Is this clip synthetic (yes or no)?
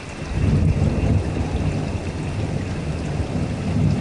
no